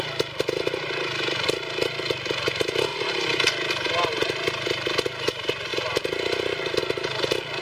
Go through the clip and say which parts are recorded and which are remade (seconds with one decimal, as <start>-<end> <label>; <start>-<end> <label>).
0.0-7.6 recorded